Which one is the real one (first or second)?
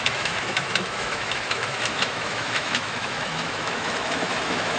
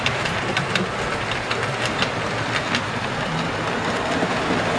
second